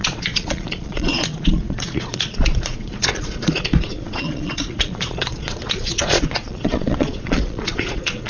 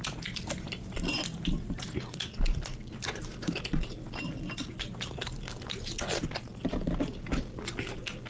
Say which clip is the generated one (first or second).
first